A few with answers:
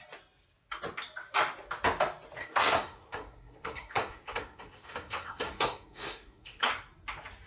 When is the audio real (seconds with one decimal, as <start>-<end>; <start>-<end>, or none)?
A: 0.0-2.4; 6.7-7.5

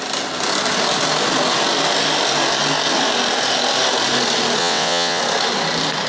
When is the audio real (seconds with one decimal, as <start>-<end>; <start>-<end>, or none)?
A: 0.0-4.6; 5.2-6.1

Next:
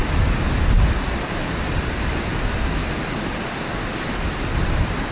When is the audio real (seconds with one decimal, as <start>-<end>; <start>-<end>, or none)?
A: 2.3-2.8; 3.5-5.1

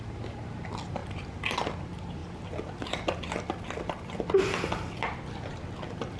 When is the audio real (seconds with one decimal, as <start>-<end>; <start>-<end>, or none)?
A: 2.2-6.2

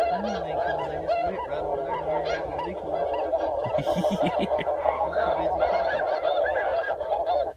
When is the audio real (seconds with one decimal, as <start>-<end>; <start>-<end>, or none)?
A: 0.0-4.8; 5.3-7.6

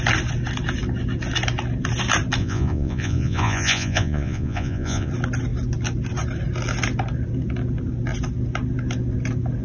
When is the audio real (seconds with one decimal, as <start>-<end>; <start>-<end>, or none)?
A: 0.0-2.4; 5.1-9.6